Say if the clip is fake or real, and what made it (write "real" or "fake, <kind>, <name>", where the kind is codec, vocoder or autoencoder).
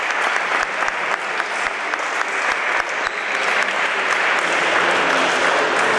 real